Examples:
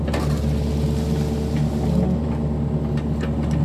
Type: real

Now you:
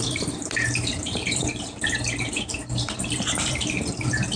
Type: fake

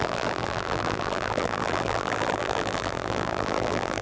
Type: fake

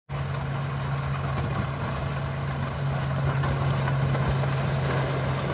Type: real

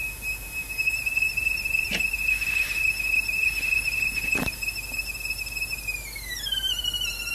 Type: fake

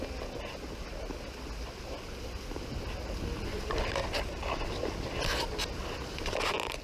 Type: real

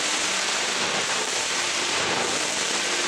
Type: fake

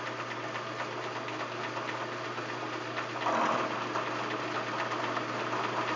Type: real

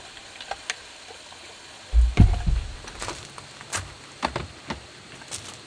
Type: real